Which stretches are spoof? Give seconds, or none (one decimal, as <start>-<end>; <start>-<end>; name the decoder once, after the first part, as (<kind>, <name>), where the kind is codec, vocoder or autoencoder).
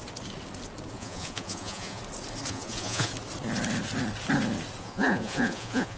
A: 0.9-2.0 (vocoder, Vocos); 2.5-3.1; 4.8-6.0